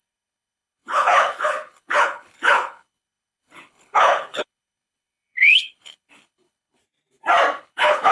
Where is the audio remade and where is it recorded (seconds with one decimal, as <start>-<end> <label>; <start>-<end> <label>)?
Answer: 0.0-6.8 remade; 6.8-7.6 recorded; 7.6-8.1 remade